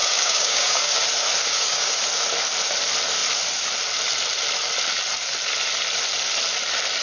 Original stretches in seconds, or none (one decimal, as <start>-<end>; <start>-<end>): 1.0-1.5; 2.0-7.0